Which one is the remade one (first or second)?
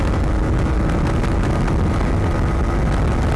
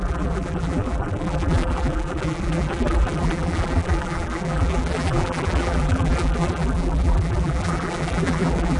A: second